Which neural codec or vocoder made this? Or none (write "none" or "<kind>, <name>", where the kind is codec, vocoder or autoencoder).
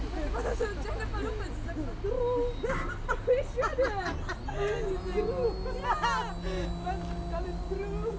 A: none